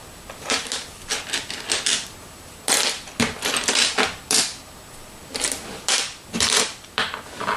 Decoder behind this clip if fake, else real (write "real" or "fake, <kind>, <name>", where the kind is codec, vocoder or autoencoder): real